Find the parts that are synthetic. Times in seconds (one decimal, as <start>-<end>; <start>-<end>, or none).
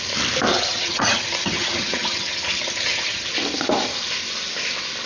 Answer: 0.5-3.3